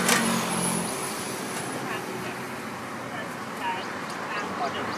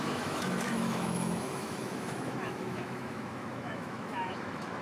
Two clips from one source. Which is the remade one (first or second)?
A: second